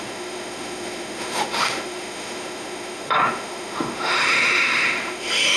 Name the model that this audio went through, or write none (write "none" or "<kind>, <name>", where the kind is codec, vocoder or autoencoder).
autoencoder, DAC-VAE